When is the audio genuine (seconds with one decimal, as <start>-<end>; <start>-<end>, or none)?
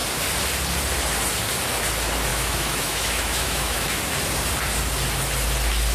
0.0-2.3; 4.0-5.9